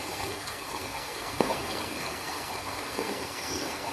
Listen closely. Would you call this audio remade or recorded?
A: remade